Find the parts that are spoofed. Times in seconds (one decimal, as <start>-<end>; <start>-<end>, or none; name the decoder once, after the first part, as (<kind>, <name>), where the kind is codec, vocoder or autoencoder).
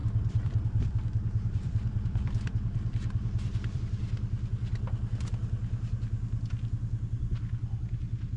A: 0.0-3.8 (vocoder, BigVGAN v2)